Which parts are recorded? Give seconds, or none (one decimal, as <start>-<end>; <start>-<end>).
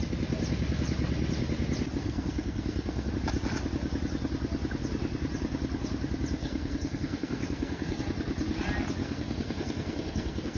0.0-2.0; 3.1-6.4; 8.0-9.0